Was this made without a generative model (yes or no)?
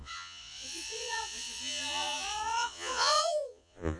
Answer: no